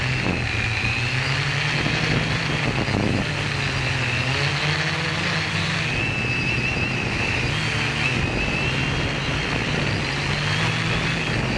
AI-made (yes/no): no